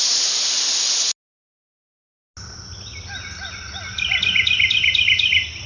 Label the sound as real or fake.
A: real